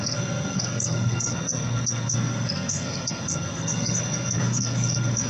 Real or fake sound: fake